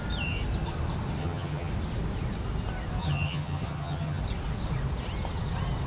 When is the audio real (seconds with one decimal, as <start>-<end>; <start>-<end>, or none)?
0.0-1.2; 1.7-3.0; 4.2-5.9